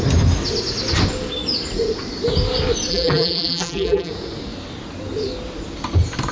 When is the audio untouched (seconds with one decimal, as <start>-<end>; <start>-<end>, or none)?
0.0-2.9; 4.1-6.3